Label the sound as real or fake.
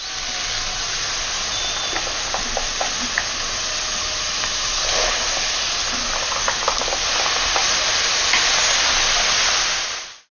real